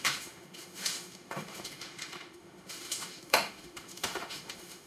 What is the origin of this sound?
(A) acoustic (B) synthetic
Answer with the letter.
B